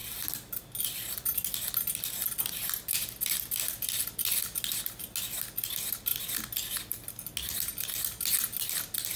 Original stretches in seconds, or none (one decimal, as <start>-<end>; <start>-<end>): 0.0-9.2